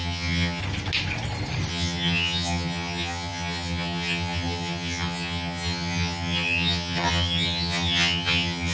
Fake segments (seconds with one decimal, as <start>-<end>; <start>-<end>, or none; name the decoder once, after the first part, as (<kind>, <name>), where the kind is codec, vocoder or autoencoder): 0.0-0.6 (vocoder, HiFi-GAN); 1.7-8.7